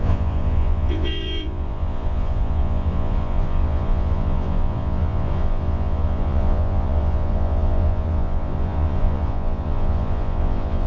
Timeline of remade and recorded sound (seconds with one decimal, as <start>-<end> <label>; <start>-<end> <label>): 0.0-10.9 remade